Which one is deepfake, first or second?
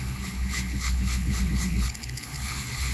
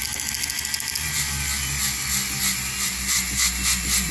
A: first